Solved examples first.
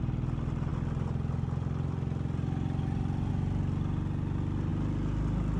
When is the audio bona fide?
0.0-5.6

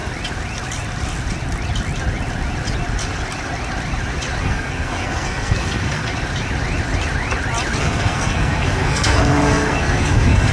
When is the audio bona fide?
0.0-4.4; 6.1-7.8

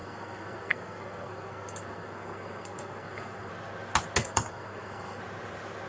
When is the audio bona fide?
3.5-4.2; 5.2-5.9